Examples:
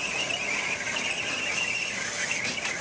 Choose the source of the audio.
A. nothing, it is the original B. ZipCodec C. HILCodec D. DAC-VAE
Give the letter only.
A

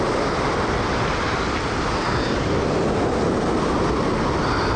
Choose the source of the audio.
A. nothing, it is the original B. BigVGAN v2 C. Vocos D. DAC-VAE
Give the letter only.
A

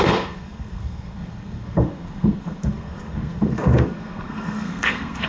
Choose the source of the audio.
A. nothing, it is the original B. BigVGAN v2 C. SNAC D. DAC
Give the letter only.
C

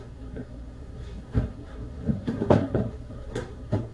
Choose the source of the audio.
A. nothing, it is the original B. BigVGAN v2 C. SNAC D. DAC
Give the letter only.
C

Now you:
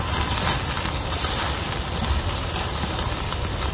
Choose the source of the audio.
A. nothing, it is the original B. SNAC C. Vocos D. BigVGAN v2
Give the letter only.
A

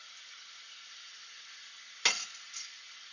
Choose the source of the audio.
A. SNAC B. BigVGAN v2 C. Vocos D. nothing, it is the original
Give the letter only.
D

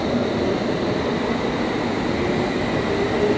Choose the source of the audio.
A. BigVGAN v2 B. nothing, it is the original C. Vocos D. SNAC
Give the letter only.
B